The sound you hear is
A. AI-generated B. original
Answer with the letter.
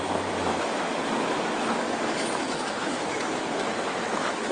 A